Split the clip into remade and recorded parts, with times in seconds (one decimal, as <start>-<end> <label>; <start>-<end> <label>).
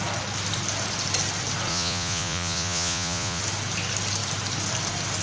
0.0-1.7 recorded; 1.7-3.4 remade; 3.4-5.2 recorded